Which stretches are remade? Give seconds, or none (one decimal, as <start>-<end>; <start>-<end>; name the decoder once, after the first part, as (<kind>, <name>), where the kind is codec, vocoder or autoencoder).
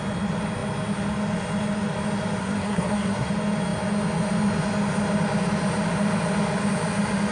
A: 2.4-3.3 (codec, SNAC)